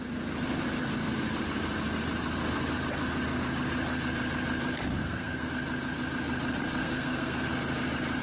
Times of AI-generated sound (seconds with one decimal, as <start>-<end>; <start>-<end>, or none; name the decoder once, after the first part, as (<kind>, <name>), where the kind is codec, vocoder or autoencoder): 5.0-5.5 (codec, SNAC); 6.8-7.5